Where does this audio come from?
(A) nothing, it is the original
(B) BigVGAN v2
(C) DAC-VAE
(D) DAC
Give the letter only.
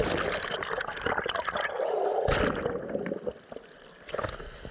A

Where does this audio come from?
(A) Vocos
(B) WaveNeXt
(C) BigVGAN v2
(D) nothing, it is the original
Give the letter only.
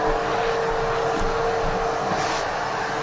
D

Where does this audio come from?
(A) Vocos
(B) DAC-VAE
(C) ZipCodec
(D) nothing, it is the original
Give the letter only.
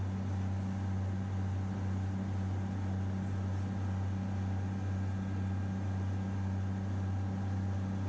D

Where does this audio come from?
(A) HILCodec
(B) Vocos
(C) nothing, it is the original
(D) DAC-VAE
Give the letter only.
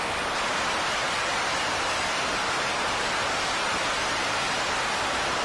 C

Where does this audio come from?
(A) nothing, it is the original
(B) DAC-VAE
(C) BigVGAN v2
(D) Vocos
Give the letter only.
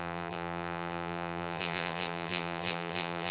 C